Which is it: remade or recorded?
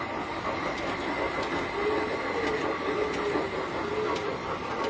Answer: recorded